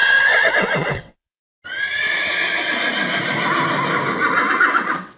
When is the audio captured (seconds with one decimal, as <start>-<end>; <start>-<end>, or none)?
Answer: 1.4-4.5

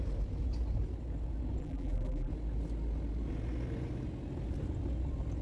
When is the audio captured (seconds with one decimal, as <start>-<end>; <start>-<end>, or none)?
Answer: 0.0-1.6; 2.3-5.4

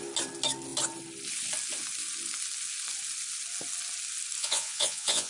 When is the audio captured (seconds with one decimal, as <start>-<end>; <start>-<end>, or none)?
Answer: 0.0-4.4